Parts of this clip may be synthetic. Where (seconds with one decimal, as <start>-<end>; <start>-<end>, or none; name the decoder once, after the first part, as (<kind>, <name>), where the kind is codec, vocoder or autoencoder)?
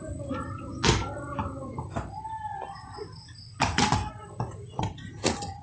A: none